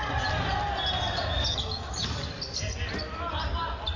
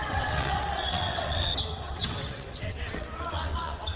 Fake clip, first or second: second